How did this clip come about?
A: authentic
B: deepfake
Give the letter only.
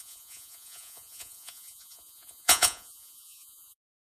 B